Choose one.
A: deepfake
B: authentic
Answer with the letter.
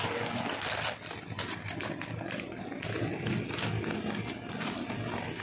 B